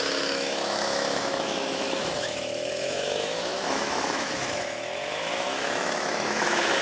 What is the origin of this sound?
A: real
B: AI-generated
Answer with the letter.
B